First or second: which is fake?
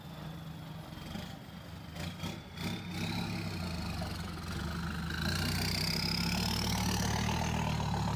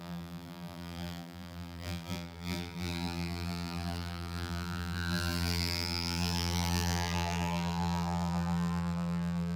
second